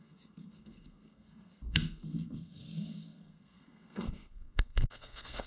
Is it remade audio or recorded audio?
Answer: remade